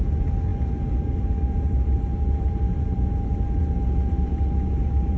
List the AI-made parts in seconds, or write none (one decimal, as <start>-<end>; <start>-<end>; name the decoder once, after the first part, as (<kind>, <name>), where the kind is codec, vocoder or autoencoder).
0.0-5.2 (vocoder, BigVGAN v2)